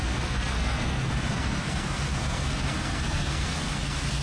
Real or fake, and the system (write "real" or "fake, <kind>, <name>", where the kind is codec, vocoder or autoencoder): fake, codec, SNAC